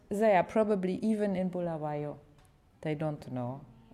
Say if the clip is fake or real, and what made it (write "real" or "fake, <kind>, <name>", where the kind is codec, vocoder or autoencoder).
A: real